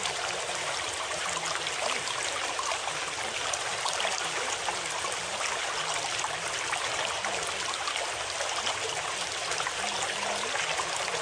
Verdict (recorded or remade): recorded